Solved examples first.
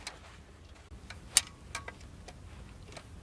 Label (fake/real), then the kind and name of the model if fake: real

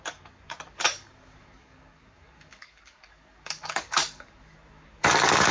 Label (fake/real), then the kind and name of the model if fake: fake, codec, DAC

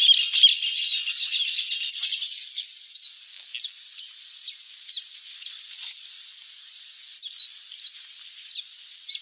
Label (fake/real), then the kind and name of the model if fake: real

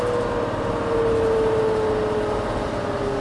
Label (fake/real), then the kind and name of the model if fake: real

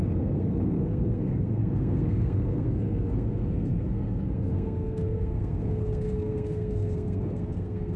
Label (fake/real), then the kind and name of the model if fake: fake, codec, SNAC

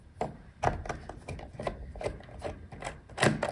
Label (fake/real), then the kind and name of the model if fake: real